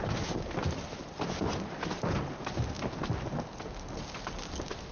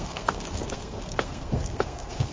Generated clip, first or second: second